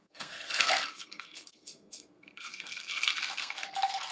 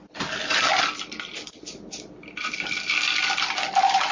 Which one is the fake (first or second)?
first